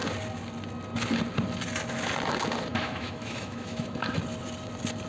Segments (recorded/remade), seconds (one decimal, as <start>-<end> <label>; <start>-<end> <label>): 0.0-2.7 recorded; 2.7-4.2 remade; 4.2-5.1 recorded